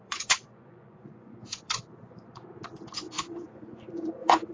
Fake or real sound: fake